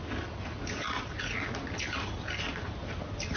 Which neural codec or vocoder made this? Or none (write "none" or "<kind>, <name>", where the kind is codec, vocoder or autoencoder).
none